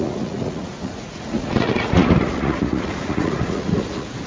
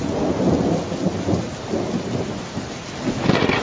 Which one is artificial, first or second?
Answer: first